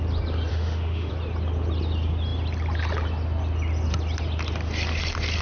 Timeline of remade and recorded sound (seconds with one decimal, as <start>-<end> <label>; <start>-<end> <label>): 0.0-0.5 recorded; 0.5-1.1 remade; 1.1-5.4 recorded